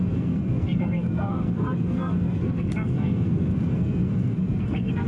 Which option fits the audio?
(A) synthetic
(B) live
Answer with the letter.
A